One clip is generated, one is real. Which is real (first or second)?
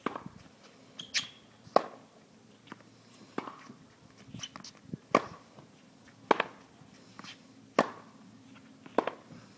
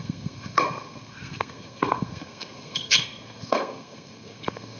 first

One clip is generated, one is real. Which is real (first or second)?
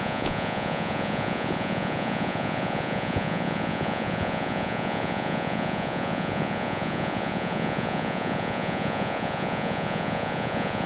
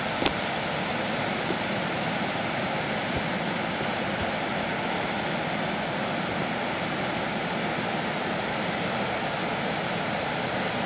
second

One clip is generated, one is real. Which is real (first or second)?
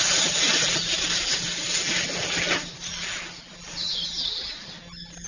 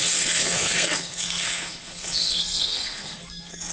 first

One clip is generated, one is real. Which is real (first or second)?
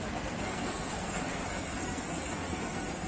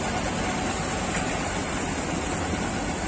second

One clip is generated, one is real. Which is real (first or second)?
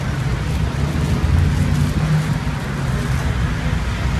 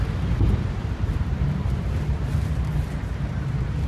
first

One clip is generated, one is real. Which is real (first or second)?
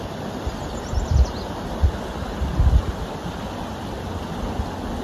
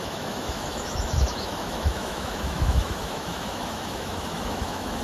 first